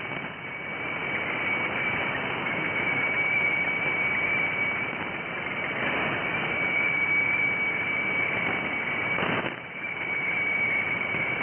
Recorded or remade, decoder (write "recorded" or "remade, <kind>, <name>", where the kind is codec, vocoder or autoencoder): recorded